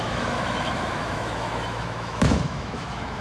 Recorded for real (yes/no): no